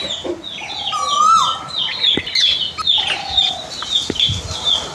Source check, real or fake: real